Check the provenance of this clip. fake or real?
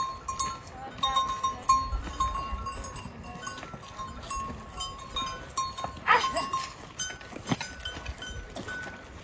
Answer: real